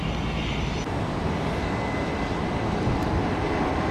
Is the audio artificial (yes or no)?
no